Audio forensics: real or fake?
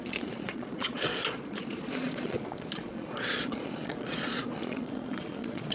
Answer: fake